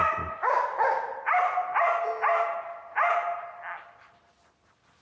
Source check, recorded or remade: recorded